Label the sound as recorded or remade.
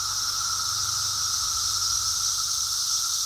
recorded